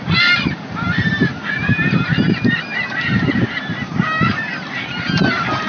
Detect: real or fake fake